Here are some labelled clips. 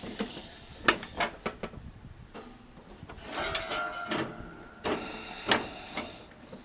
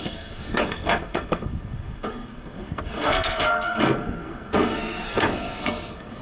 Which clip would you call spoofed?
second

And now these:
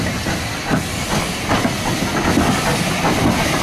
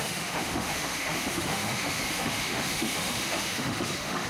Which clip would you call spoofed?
second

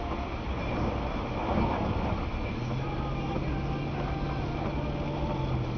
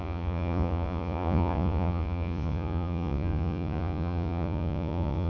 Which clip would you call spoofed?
second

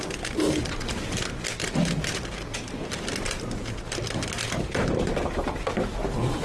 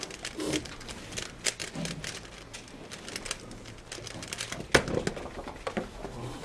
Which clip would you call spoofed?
first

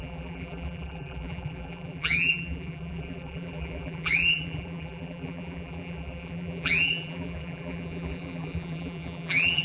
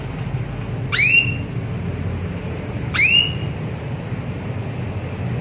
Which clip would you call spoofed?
first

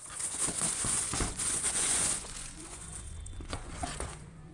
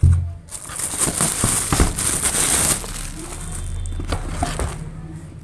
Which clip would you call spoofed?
first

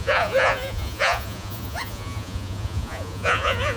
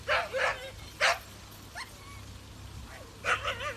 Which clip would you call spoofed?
first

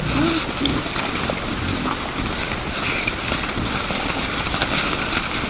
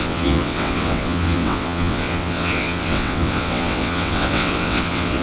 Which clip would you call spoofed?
second